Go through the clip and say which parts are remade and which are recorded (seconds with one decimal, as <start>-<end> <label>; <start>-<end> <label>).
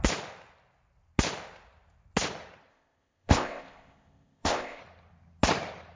0.0-2.7 recorded; 2.7-4.8 remade; 4.8-6.0 recorded